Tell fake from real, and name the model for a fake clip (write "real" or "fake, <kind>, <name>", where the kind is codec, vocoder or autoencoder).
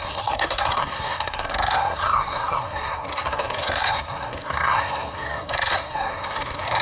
fake, codec, SNAC